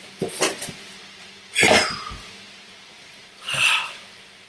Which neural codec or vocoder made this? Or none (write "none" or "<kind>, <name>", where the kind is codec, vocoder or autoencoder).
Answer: none